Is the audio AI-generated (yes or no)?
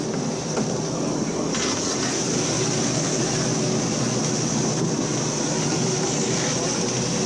no